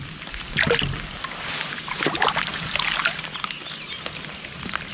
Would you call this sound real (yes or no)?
yes